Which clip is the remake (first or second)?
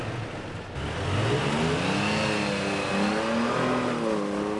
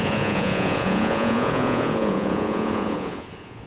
second